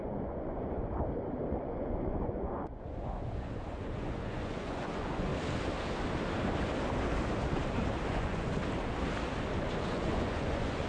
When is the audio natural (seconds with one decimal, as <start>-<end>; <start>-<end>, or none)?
0.8-1.5; 5.3-8.1; 8.6-9.8